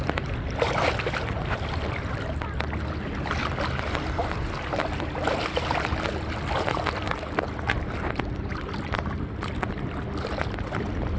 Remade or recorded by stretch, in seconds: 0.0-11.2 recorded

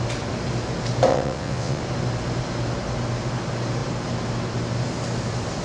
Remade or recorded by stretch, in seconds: 0.0-1.1 recorded; 1.1-1.8 remade; 1.8-5.6 recorded

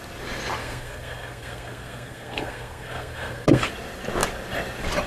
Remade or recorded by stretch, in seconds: 0.0-0.6 recorded; 0.6-3.7 remade; 3.7-5.1 recorded

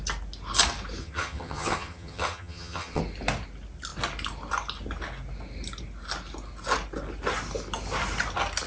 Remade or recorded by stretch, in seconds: 0.0-1.0 recorded; 1.0-3.0 remade; 3.0-8.7 recorded